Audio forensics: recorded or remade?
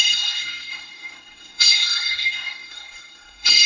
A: remade